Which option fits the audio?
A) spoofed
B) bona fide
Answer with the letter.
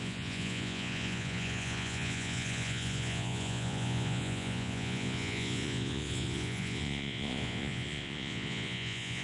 A